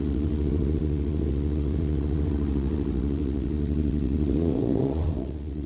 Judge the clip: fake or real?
fake